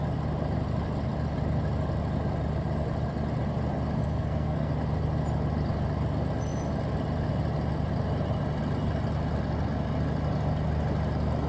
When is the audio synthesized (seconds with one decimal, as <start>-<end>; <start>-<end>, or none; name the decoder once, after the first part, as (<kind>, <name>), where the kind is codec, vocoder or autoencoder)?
4.0-4.7 (codec, SNAC)